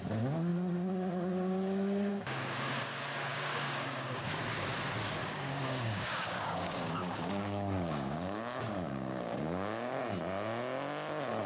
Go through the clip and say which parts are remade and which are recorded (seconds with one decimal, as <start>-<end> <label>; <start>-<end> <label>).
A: 0.0-2.1 recorded; 2.1-2.7 remade; 2.7-3.3 recorded; 3.3-4.3 remade; 4.3-5.2 recorded; 5.2-10.0 remade; 10.0-11.5 recorded